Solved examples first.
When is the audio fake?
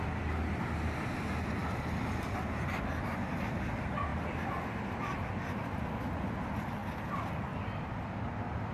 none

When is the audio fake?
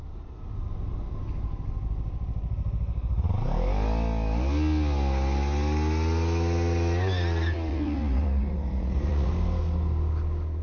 7.7-9.3 (vocoder, Vocos)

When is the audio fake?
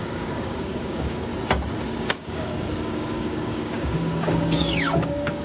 0.0-1.3 (codec, DAC); 1.9-5.4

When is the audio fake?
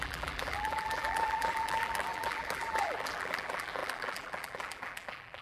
0.0-5.4 (vocoder, BigVGAN v2)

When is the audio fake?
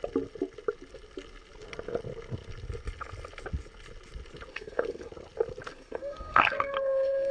4.5-5.1 (codec, SNAC); 5.7-7.3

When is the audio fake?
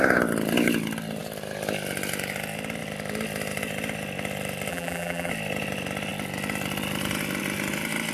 4.7-5.3 (vocoder, BigVGAN v2)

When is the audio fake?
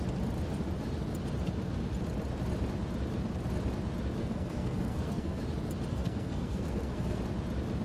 4.2-5.4 (codec, SNAC); 5.9-7.2